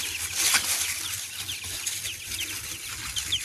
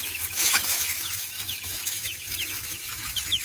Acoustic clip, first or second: first